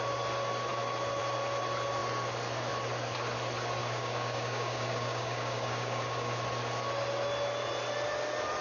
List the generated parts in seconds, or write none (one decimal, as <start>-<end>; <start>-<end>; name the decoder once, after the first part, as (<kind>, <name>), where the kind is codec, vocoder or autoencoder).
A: 3.8-6.3 (codec, DAC)